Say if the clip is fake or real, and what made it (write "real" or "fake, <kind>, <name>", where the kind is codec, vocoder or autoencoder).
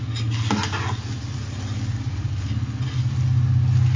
real